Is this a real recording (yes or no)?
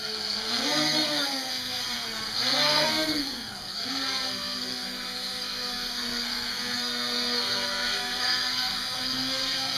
no